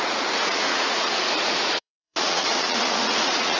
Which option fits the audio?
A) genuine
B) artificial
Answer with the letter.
B